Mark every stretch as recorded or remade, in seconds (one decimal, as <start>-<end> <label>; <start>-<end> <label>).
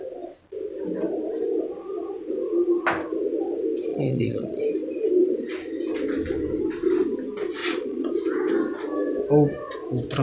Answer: 0.0-3.9 recorded; 3.9-4.6 remade; 4.6-7.6 recorded; 7.6-8.1 remade; 8.1-10.2 recorded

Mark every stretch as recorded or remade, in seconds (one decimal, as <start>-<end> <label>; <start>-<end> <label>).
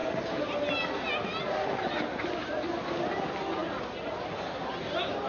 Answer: 0.0-5.3 recorded